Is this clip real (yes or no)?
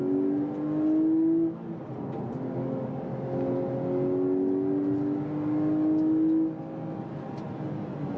yes